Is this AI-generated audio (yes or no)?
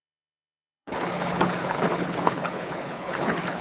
yes